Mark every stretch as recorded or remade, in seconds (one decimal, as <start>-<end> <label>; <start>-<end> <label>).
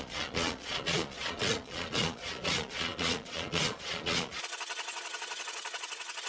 0.0-6.3 remade